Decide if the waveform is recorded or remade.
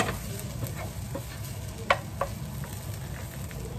recorded